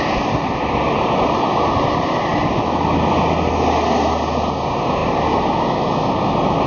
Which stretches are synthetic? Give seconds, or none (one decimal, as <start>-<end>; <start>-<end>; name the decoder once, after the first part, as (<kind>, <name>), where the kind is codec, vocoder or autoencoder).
none